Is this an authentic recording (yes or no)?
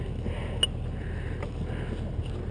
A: yes